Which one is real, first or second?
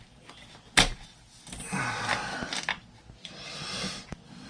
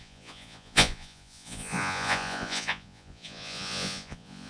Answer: first